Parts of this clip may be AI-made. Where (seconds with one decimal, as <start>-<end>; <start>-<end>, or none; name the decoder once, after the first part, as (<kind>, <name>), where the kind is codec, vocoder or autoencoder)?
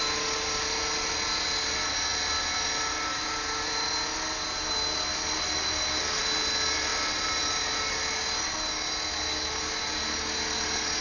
none